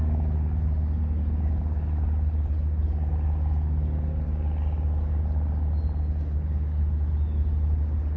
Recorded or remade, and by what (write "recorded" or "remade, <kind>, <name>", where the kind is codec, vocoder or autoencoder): recorded